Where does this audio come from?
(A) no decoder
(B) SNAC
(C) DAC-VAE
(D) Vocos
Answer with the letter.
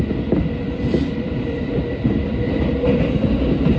A